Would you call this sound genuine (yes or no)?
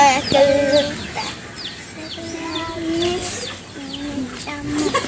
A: yes